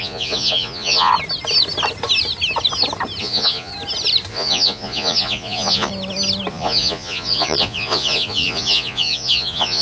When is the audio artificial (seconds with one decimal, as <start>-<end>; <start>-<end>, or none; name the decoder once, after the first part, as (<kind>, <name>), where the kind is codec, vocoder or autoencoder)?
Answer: 0.0-1.1 (vocoder, Vocos); 3.2-3.7; 4.3-5.9; 6.5-9.8